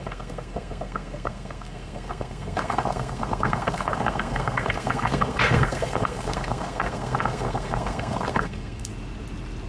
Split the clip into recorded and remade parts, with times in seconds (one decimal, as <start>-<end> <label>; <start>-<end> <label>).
0.0-8.9 remade; 8.9-9.7 recorded